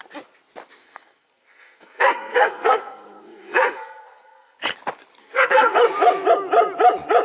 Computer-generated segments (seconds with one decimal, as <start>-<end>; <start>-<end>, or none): 0.8-4.6; 5.2-5.8